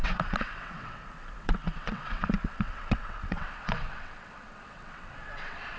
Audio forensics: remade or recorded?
remade